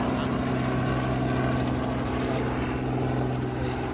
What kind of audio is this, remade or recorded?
recorded